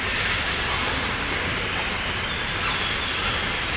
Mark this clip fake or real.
real